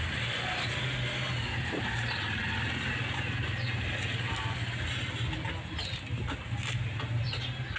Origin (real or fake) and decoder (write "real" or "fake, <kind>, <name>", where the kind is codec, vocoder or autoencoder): real